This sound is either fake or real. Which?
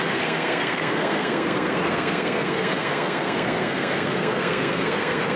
fake